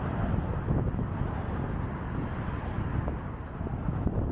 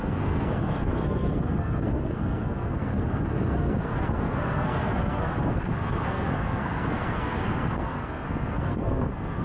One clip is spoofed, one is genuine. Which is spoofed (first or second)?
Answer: second